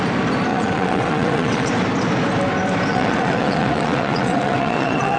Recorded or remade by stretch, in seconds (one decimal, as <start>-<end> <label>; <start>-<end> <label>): 0.0-0.5 recorded; 0.5-1.7 remade; 1.7-2.9 recorded; 2.9-5.2 remade